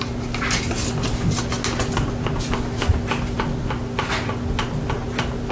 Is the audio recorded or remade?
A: recorded